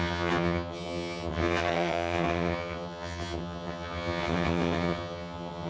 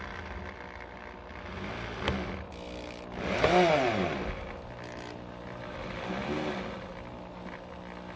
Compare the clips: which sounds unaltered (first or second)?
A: second